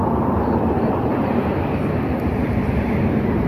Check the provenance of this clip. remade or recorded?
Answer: recorded